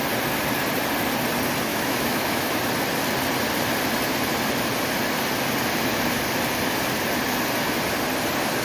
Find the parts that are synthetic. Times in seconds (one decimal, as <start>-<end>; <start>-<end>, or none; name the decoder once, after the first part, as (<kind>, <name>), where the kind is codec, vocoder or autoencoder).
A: 1.7-2.6 (autoencoder, DAC-VAE)